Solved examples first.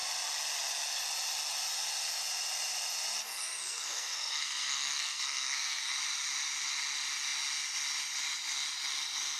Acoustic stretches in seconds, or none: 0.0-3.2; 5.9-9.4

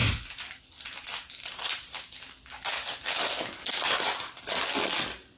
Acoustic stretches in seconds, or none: 0.0-5.4

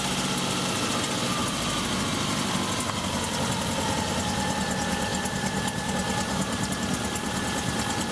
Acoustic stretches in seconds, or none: 0.0-8.1

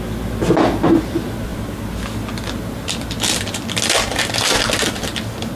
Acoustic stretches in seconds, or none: 0.0-5.6

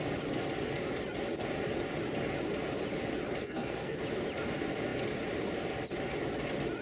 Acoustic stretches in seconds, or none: 0.0-3.4; 4.0-6.8